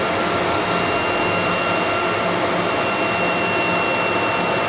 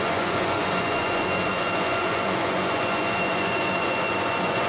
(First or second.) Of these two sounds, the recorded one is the first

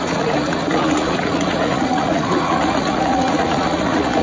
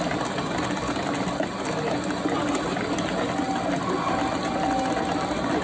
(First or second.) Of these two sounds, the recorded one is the second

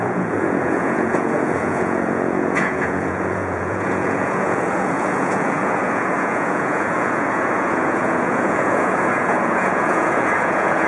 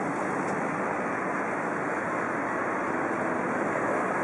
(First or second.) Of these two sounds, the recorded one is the second